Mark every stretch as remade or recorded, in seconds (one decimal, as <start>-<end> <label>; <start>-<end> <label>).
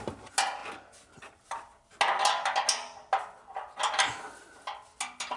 0.0-5.4 recorded